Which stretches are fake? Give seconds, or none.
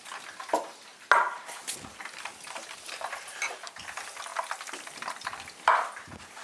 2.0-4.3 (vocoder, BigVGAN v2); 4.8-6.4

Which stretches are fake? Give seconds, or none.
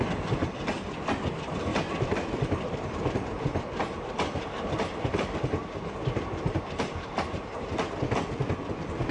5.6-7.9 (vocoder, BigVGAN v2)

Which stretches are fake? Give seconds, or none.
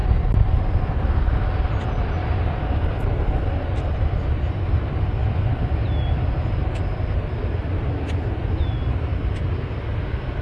none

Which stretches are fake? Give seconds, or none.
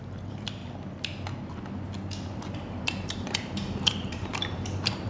0.0-0.6 (vocoder, BigVGAN v2); 2.8-5.1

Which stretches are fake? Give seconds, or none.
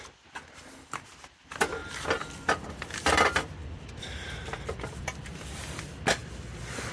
1.8-2.8 (vocoder, BigVGAN v2); 3.6-5.0